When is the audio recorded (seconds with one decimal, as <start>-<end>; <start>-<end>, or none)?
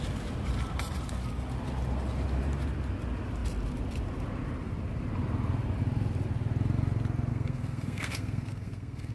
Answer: 0.0-7.3